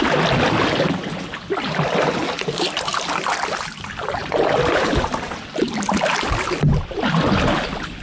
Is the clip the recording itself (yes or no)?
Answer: yes